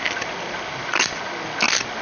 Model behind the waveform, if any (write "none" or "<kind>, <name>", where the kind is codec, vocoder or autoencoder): none